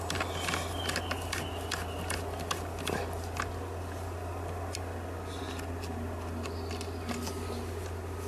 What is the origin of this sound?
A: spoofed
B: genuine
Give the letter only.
B